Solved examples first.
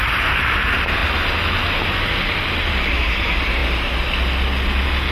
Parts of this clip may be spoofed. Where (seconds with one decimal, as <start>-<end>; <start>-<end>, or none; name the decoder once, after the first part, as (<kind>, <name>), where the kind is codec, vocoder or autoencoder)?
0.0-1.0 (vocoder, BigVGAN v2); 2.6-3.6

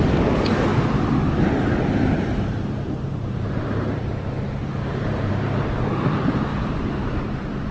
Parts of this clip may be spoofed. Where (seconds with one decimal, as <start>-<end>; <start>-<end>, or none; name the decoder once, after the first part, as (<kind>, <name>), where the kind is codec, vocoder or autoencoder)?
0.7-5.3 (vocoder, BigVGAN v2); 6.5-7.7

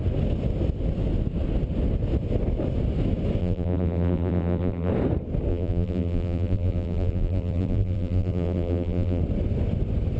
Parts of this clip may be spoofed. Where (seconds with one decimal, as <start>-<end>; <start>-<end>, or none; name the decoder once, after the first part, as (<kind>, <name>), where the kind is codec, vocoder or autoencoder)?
3.4-4.9 (vocoder, BigVGAN v2); 5.5-9.2

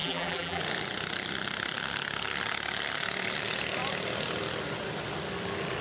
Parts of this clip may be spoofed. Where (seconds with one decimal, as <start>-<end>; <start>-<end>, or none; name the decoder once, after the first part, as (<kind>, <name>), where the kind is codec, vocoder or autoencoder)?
0.0-0.6 (vocoder, BigVGAN v2)

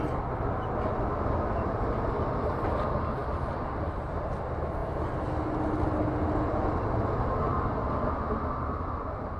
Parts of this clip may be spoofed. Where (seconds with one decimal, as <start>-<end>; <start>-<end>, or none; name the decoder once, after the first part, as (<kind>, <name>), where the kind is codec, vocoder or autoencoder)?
4.8-5.3 (vocoder, BigVGAN v2)

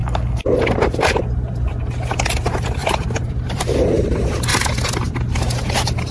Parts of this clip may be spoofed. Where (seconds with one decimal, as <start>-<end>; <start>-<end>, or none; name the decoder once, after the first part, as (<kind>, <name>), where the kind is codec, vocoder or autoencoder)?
2.8-4.1 (vocoder, BigVGAN v2)